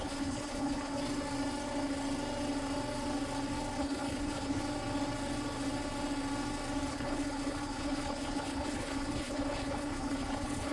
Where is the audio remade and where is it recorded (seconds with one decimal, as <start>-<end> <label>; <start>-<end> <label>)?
0.0-1.0 remade; 1.0-3.8 recorded; 3.8-4.6 remade; 4.6-6.9 recorded; 6.9-10.7 remade